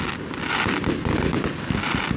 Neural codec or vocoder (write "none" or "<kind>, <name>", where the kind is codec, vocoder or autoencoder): none